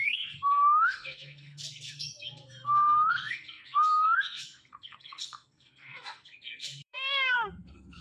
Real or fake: fake